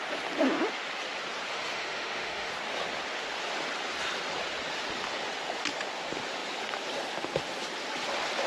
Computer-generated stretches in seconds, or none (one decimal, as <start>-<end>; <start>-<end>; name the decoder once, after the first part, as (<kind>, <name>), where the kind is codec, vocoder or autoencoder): 1.5-2.5 (autoencoder, DAC-VAE)